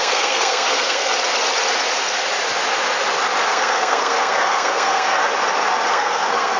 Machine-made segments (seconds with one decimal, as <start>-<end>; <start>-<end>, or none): 0.0-1.1; 3.5-5.2; 5.9-6.6